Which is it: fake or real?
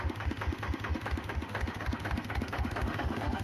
fake